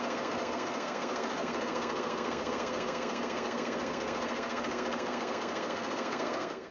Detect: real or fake fake